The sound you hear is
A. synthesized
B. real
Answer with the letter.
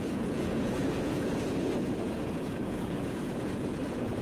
A